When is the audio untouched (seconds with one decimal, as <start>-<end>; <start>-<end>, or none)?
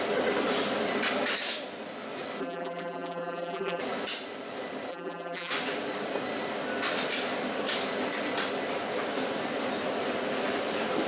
0.0-2.4; 3.8-4.9; 5.5-11.1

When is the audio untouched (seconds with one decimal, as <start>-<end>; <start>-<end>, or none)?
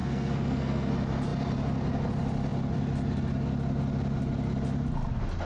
0.9-5.5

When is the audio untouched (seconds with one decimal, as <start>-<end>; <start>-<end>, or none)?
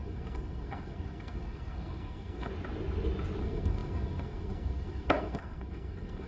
2.5-3.4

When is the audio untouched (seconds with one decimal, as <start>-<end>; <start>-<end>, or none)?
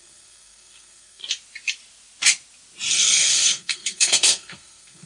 1.2-2.9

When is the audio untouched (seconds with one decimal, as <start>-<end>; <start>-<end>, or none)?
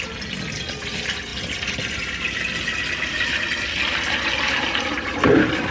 0.0-5.7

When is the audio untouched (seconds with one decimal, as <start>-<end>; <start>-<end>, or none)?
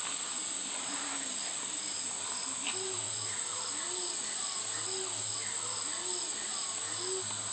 0.0-7.5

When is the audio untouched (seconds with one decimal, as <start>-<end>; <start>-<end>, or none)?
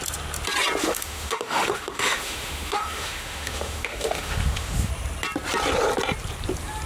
0.0-0.8; 4.9-6.9